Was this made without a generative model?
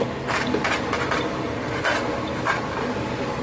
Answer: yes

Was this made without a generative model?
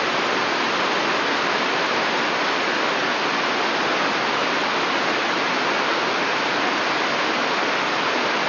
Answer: yes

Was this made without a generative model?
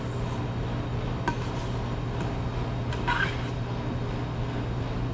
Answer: yes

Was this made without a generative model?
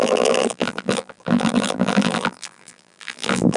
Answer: no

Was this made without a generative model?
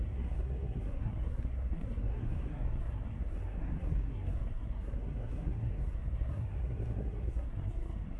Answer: no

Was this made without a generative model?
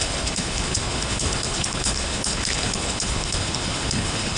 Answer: no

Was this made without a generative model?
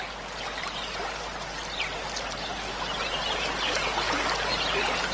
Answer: yes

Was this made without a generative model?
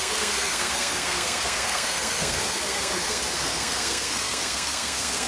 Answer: no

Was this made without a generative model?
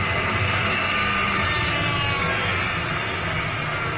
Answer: yes